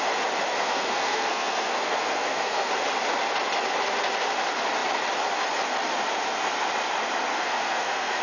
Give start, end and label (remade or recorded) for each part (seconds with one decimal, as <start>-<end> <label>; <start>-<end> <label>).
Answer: 0.0-0.5 recorded; 0.5-2.7 remade; 2.7-7.3 recorded; 7.3-8.2 remade